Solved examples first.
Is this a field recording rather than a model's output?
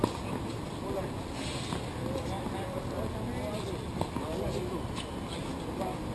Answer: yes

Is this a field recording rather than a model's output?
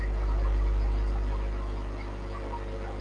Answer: yes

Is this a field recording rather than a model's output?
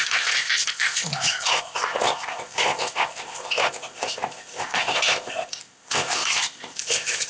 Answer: no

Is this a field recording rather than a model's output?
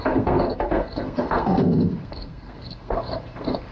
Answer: no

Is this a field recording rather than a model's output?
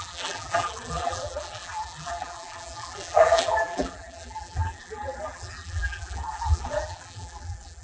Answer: no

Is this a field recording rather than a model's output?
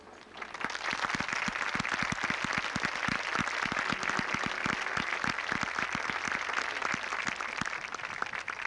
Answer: yes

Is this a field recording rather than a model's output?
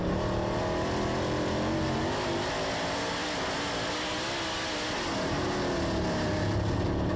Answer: yes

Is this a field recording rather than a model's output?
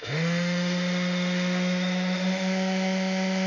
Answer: no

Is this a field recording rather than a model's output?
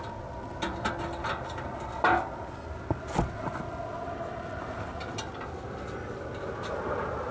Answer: yes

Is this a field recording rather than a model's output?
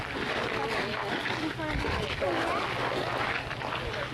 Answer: yes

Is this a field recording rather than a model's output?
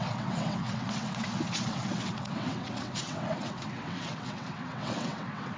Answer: no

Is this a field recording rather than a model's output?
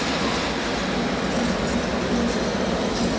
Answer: yes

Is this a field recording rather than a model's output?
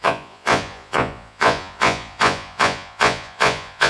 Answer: no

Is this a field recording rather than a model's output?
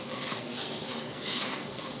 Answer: no